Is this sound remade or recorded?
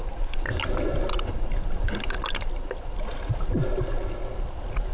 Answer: recorded